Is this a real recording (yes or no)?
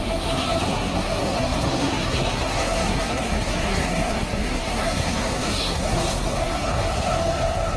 no